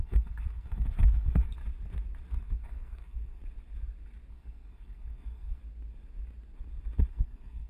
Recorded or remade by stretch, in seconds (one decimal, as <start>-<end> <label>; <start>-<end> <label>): 0.0-1.6 remade; 1.6-2.3 recorded; 2.3-3.4 remade; 3.4-4.3 recorded; 4.3-5.6 remade; 5.6-7.1 recorded; 7.1-7.7 remade